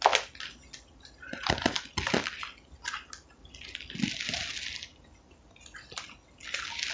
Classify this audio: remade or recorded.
recorded